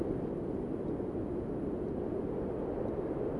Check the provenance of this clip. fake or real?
real